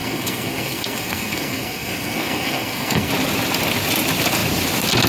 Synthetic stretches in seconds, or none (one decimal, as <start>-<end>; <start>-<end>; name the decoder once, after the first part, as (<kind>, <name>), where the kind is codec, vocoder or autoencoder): 0.0-3.1 (codec, SNAC)